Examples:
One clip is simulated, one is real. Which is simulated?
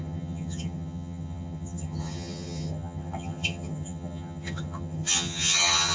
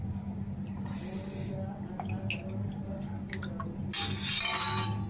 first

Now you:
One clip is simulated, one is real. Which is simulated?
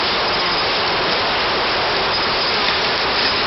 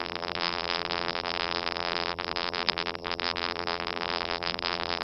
second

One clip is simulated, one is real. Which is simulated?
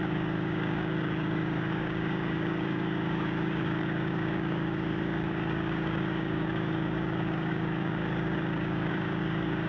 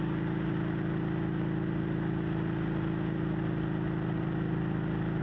first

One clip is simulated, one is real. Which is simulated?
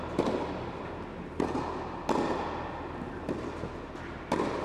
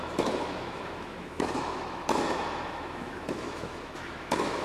second